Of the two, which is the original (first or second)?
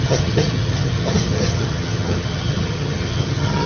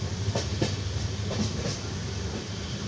second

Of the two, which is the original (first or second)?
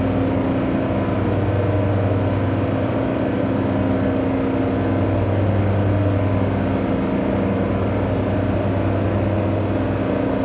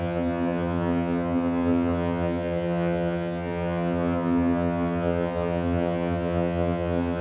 first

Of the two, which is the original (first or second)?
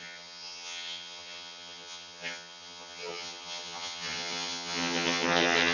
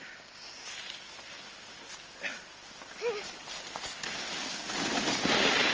second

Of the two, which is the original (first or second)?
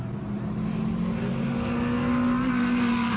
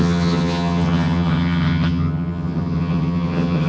first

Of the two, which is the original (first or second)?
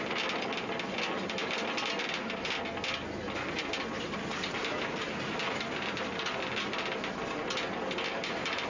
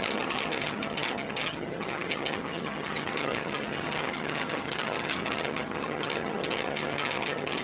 first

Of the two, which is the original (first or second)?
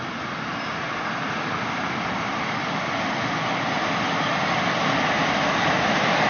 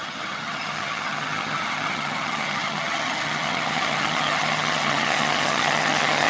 first